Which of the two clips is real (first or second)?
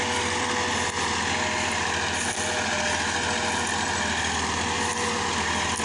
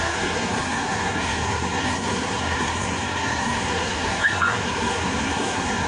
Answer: first